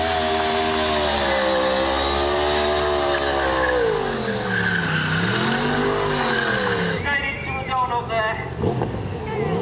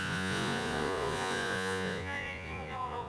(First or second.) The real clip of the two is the first